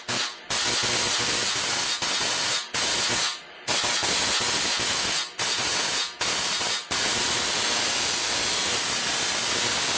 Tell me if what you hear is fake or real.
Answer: real